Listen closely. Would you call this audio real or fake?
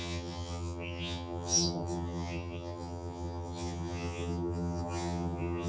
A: fake